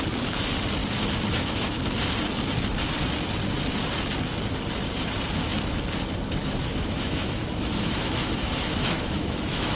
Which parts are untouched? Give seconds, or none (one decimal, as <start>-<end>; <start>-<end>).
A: 0.0-6.4